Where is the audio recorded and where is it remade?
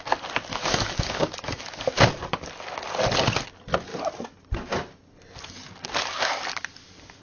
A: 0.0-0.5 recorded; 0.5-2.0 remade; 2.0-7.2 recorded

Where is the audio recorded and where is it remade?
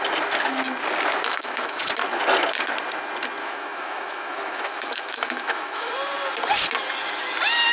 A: 0.0-1.3 recorded; 1.3-1.9 remade; 1.9-3.4 recorded; 3.4-5.9 remade; 5.9-7.7 recorded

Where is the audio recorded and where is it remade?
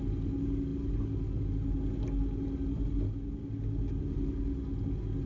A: 0.0-5.3 recorded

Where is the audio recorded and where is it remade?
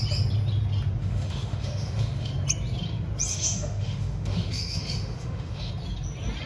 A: 0.0-1.0 recorded; 1.0-2.3 remade; 2.3-3.3 recorded; 3.3-5.7 remade; 5.7-6.5 recorded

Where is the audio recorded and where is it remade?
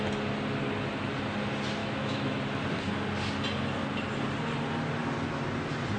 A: 0.0-1.8 recorded; 1.8-2.4 remade; 2.4-6.0 recorded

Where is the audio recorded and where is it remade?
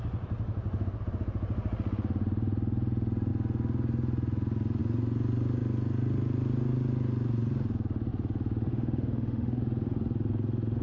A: 0.0-8.7 recorded; 8.7-9.6 remade; 9.6-10.8 recorded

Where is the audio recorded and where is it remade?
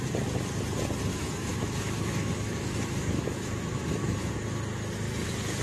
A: 0.0-1.1 recorded; 1.1-4.3 remade; 4.3-5.6 recorded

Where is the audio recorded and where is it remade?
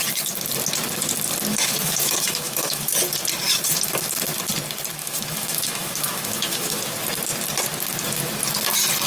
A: 0.0-1.5 recorded; 1.5-2.9 remade; 2.9-5.0 recorded; 5.0-6.8 remade; 6.8-9.1 recorded